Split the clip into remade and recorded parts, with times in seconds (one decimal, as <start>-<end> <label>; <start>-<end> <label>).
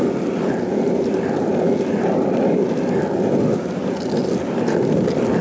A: 0.0-5.4 recorded